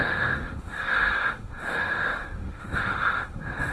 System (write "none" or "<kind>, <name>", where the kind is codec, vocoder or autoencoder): autoencoder, DAC-VAE